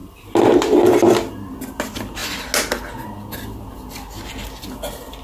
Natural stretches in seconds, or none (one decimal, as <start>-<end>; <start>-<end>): 0.0-5.2